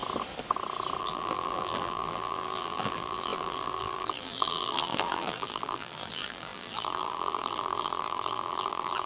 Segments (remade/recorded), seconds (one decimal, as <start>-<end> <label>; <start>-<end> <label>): 0.0-1.0 recorded; 1.0-9.1 remade